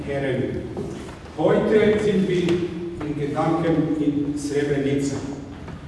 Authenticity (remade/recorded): recorded